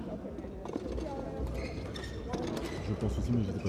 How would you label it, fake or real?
real